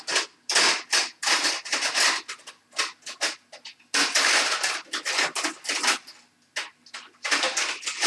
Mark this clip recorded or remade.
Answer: recorded